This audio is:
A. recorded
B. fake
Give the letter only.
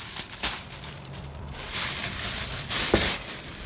B